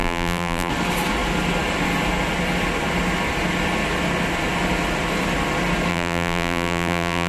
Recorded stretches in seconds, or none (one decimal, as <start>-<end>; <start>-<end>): 0.7-5.9